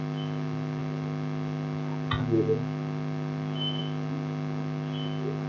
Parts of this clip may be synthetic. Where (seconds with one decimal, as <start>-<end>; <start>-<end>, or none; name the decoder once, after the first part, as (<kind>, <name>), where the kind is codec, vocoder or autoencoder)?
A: none